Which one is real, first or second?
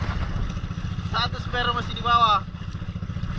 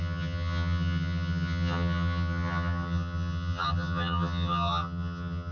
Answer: first